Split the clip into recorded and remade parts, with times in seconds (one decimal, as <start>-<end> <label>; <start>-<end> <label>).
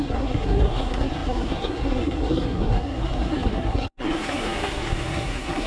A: 0.0-5.7 remade